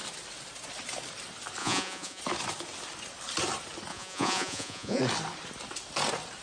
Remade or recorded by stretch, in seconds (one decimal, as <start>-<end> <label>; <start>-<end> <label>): 0.0-1.6 recorded; 1.6-2.2 remade; 2.2-3.9 recorded; 3.9-5.0 remade; 5.0-6.4 recorded